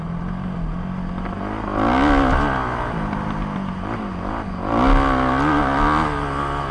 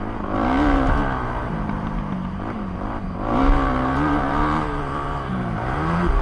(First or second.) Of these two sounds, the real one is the first